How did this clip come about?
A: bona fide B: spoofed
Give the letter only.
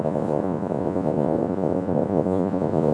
B